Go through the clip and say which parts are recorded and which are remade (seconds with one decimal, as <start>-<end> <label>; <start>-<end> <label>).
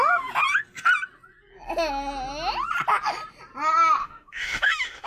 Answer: 0.0-4.0 recorded; 4.0-5.1 remade